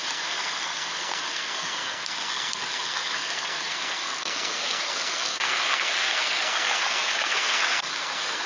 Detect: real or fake fake